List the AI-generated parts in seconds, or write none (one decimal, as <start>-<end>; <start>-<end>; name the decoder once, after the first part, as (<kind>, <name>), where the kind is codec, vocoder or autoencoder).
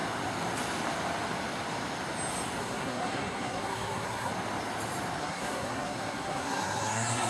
2.6-4.3 (codec, SNAC); 5.2-7.3